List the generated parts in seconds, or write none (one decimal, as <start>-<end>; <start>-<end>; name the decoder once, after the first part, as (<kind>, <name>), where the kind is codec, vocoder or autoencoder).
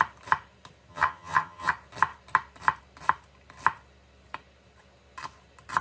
0.9-1.7 (vocoder, HiFi-GAN)